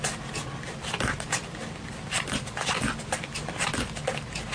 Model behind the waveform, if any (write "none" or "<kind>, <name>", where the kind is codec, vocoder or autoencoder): none